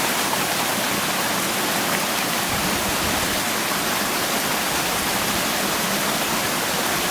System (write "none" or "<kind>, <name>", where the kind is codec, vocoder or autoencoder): none